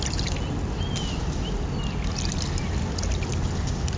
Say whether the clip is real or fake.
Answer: real